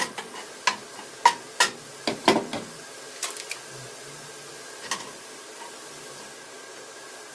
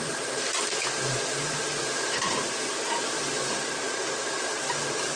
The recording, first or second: first